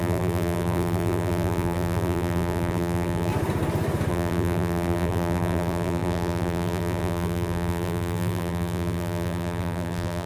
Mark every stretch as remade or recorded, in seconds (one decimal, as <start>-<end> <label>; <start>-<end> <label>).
0.0-3.3 remade; 3.3-4.1 recorded; 4.1-10.3 remade